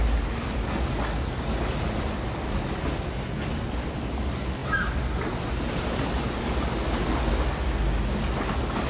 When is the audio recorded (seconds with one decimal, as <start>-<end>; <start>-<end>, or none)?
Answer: 0.0-8.9

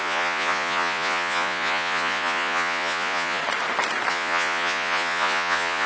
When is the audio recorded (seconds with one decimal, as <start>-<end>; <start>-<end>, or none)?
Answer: 3.4-4.1

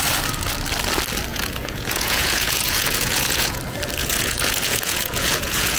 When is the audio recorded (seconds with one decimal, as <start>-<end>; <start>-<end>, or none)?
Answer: 0.0-1.3; 3.6-4.0

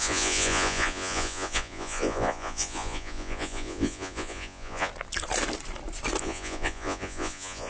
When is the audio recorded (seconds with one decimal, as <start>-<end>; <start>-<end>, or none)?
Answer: 4.9-6.2

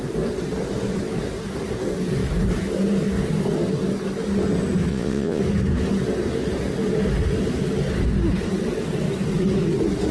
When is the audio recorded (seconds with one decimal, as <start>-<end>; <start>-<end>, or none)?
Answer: 0.0-4.9; 5.4-10.1

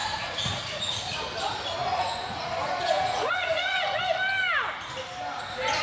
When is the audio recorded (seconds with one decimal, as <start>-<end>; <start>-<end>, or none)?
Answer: 1.0-1.8; 4.0-5.8

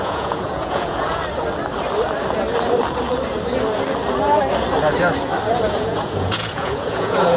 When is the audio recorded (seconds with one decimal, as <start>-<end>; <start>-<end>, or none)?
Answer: 1.2-5.6